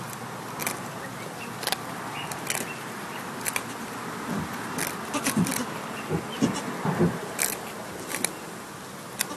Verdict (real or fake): real